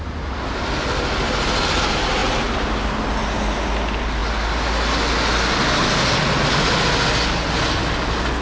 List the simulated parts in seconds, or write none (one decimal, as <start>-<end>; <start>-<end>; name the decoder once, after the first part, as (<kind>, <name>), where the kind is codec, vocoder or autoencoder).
none